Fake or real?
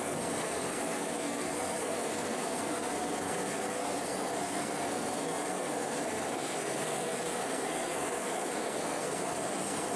fake